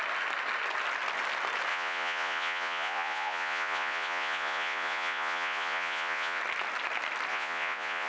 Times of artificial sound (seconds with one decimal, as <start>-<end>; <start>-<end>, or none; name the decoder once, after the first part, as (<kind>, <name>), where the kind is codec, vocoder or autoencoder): 1.7-6.4 (vocoder, Vocos); 7.3-8.1